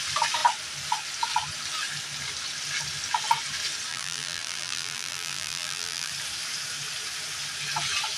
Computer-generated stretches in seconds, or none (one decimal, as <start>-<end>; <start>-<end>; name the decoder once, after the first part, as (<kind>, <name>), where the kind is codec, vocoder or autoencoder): 3.9-6.1 (vocoder, BigVGAN v2)